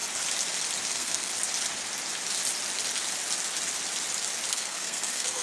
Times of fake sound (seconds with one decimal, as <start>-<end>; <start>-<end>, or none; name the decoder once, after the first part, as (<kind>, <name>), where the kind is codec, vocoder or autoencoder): 0.9-1.3 (codec, SNAC); 4.5-5.4